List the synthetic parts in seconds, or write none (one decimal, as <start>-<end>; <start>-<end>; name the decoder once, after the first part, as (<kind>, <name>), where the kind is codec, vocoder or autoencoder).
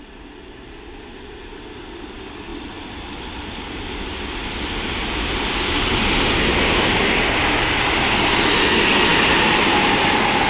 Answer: none